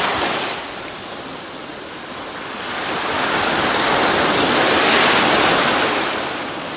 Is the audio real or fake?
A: real